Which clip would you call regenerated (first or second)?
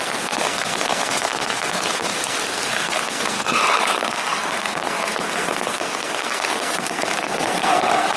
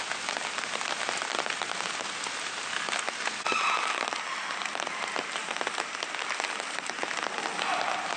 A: first